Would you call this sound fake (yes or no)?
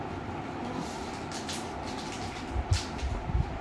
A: no